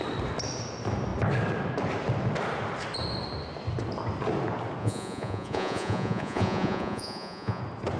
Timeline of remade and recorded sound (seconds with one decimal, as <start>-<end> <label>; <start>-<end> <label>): 0.0-4.8 recorded; 4.8-7.6 remade; 7.6-8.0 recorded